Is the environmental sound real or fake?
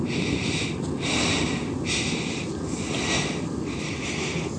real